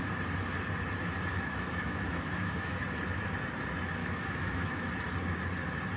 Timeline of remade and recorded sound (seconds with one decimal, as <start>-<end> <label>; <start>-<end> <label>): 0.0-1.3 recorded; 1.3-2.8 remade; 2.8-4.0 recorded; 4.0-4.9 remade; 4.9-6.0 recorded